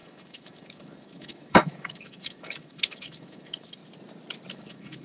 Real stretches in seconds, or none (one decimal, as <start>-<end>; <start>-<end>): 3.8-4.5